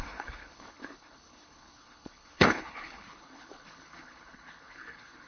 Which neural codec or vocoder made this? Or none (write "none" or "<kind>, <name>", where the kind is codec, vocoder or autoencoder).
codec, HILCodec